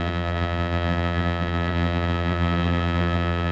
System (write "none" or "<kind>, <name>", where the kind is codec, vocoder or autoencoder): vocoder, BigVGAN v2